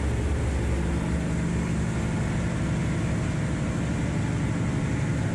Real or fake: real